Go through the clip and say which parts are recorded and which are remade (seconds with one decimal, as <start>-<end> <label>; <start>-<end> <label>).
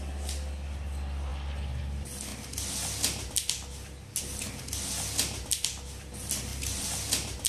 0.0-7.5 recorded